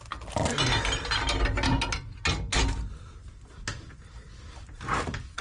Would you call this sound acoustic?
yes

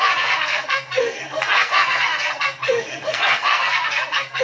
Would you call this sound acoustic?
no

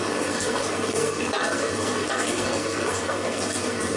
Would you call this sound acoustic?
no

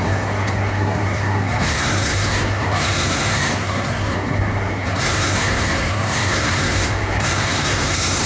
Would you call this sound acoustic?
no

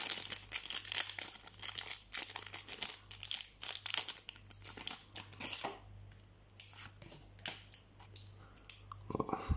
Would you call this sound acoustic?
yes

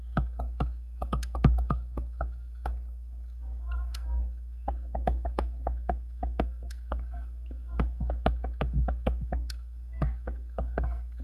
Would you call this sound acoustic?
no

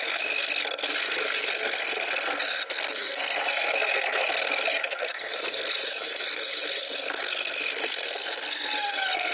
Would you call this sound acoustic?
no